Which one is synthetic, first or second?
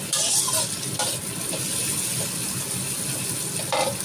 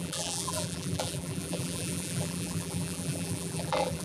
second